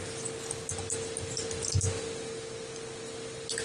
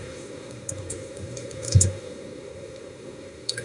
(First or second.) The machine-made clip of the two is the second